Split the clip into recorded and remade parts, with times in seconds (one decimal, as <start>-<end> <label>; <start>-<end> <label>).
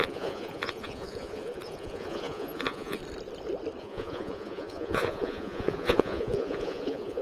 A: 0.0-3.0 remade; 3.0-3.8 recorded; 3.8-7.2 remade